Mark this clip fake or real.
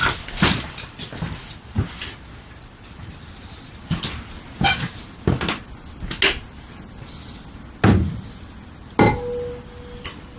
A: real